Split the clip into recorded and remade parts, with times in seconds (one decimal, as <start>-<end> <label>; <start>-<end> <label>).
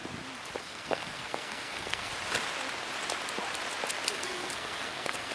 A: 0.0-0.6 recorded; 0.6-2.1 remade; 2.1-4.1 recorded; 4.1-5.3 remade